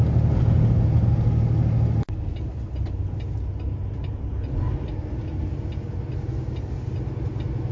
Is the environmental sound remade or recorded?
recorded